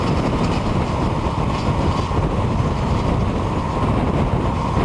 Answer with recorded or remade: recorded